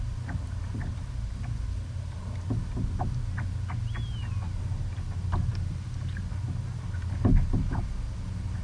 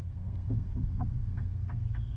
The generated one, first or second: second